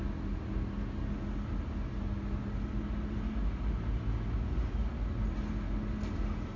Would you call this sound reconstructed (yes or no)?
no